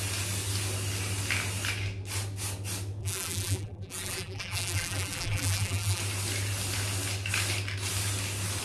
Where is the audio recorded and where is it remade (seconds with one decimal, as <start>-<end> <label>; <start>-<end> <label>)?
0.0-3.0 recorded; 3.0-6.0 remade; 6.0-8.6 recorded